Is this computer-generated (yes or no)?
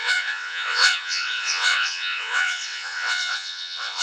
yes